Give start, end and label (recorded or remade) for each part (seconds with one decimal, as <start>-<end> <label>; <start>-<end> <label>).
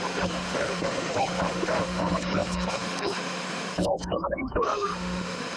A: 0.0-5.6 remade